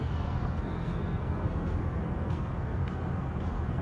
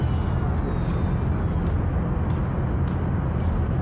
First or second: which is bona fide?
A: second